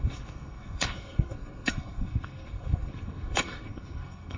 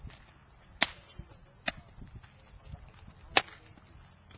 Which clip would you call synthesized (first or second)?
first